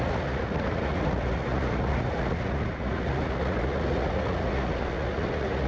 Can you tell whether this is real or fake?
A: fake